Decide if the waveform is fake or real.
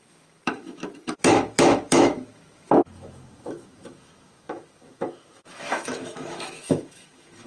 fake